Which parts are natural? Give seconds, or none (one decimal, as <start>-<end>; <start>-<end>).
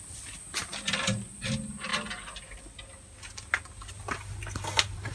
0.0-5.1